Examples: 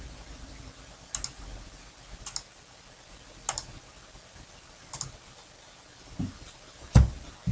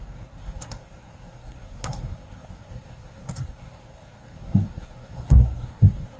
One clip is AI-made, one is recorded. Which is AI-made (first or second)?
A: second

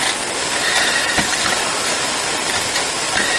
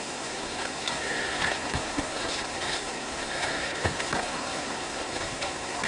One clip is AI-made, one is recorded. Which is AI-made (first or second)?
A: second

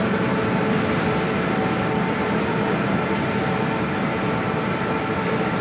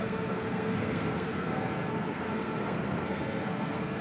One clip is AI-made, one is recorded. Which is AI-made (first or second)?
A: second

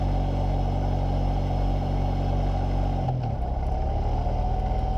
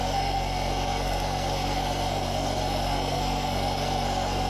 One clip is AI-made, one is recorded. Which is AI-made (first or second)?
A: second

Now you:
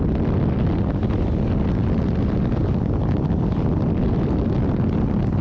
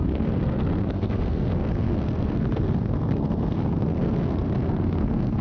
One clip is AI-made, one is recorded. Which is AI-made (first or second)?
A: second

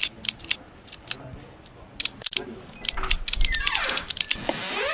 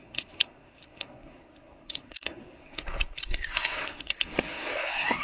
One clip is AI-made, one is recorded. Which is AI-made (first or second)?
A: second